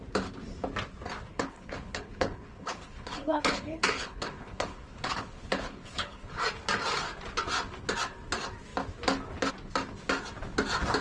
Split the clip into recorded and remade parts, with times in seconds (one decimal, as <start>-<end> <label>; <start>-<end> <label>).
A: 0.0-1.3 recorded; 1.3-6.4 remade; 6.4-11.0 recorded